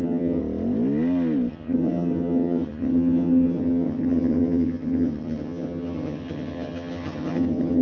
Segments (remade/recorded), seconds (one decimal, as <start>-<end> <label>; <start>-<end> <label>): 0.0-0.4 remade; 0.4-1.5 recorded; 1.5-7.8 remade